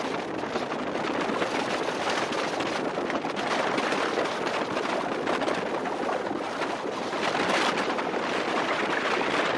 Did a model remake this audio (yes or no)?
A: no